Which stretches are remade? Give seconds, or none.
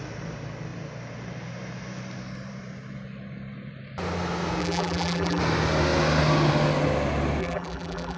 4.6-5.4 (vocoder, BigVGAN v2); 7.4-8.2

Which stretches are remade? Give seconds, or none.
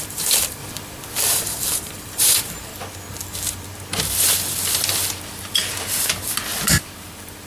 0.0-0.6 (vocoder, BigVGAN v2); 1.3-2.7